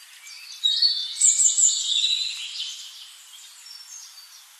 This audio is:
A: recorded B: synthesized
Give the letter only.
A